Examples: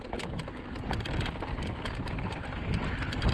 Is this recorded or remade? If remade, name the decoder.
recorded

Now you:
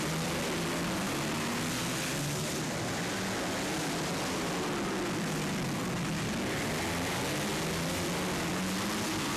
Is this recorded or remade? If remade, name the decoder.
recorded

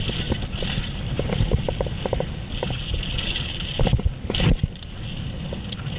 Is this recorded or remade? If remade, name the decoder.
recorded